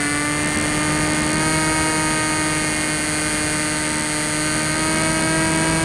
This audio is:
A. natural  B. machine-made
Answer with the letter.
A